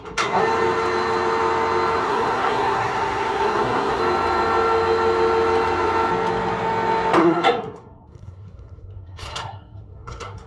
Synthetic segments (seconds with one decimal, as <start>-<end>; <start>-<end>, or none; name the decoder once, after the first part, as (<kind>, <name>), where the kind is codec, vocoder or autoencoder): 0.0-0.4 (codec, SNAC); 2.0-4.0; 7.2-10.5